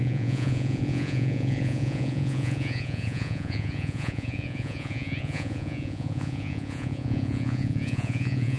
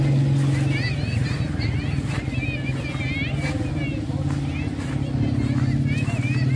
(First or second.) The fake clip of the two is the first